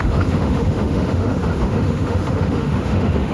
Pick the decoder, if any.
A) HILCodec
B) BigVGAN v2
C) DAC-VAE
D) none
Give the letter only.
C